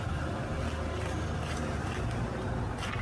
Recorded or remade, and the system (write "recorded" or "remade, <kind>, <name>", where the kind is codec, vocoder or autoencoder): recorded